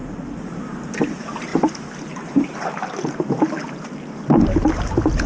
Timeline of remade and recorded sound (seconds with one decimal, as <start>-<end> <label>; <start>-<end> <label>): 0.0-0.6 remade; 0.6-5.3 recorded